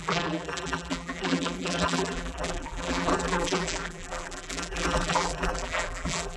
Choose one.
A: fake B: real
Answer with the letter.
A